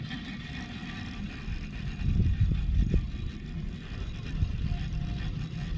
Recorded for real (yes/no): yes